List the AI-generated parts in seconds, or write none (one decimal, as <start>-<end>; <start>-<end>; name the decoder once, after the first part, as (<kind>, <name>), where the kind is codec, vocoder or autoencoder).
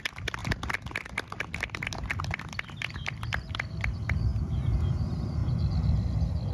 0.0-5.4 (vocoder, BigVGAN v2)